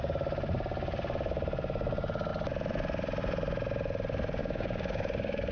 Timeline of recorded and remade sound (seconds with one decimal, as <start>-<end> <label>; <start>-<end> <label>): 0.0-4.4 recorded; 4.4-5.5 remade